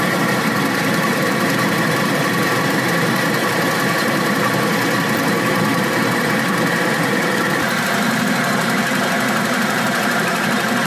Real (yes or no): no